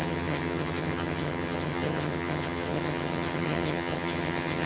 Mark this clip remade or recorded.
remade